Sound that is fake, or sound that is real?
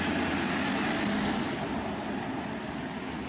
real